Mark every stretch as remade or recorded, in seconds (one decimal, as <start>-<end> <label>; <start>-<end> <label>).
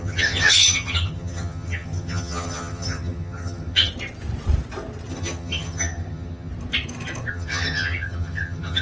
0.0-3.9 remade; 3.9-5.1 recorded; 5.1-6.5 remade; 6.5-7.3 recorded; 7.3-8.8 remade